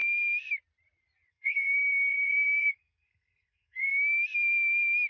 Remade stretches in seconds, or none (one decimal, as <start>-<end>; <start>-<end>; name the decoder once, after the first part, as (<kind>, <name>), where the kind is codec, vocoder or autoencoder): 1.3-3.9 (codec, SNAC)